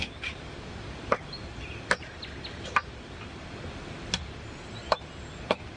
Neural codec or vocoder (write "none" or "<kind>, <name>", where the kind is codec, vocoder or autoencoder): none